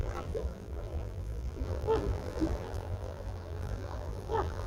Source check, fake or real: fake